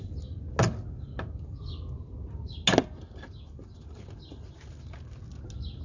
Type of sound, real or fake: real